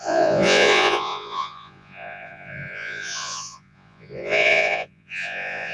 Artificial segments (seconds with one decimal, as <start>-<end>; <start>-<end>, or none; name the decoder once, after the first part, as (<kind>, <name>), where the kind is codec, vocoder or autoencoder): 0.0-5.7 (vocoder, Vocos)